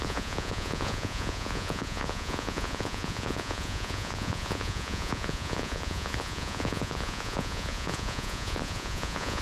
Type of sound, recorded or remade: remade